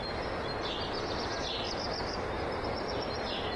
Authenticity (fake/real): real